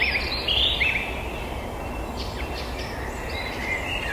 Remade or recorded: recorded